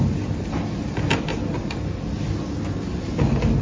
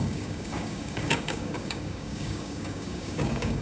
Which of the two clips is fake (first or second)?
second